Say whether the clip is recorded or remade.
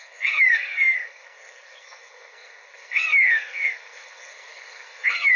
remade